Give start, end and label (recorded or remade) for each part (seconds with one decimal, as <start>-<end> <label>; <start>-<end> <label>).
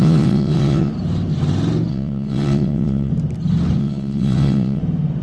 0.0-0.9 remade; 0.9-1.9 recorded; 1.9-3.1 remade; 3.1-3.8 recorded; 3.8-4.8 remade; 4.8-5.2 recorded